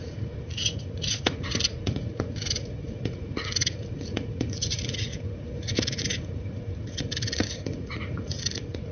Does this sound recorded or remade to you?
remade